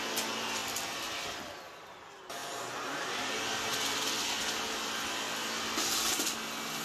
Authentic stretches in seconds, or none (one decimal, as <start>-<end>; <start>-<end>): 0.0-6.8